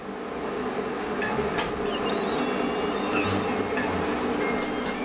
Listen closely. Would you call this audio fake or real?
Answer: real